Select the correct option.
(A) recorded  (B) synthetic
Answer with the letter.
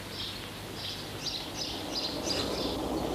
A